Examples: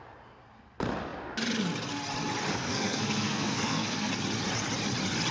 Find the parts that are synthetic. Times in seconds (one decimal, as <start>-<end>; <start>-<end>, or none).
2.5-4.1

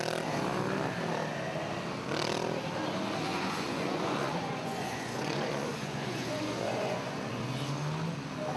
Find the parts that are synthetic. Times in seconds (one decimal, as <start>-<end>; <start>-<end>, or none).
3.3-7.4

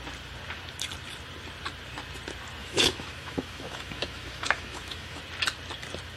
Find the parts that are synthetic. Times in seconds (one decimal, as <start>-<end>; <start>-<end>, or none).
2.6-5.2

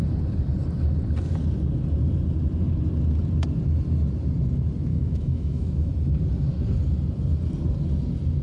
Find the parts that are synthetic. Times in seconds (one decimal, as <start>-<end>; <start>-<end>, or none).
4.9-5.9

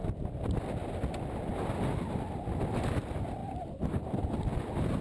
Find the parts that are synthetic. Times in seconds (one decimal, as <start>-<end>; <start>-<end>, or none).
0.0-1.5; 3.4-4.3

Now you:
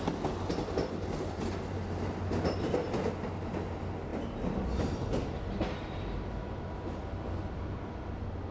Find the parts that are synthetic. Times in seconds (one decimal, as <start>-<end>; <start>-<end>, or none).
none